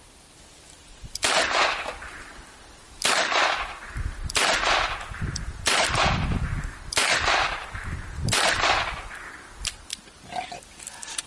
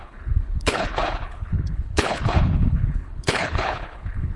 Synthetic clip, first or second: second